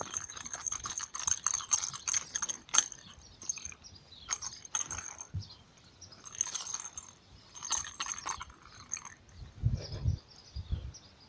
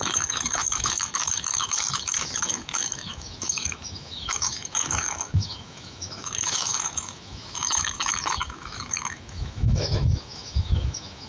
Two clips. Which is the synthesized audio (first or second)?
second